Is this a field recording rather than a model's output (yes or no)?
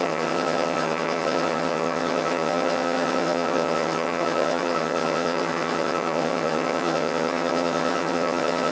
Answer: no